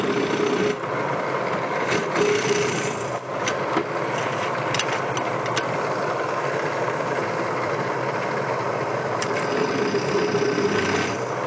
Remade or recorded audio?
recorded